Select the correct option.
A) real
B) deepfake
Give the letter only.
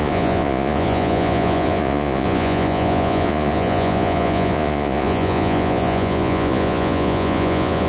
B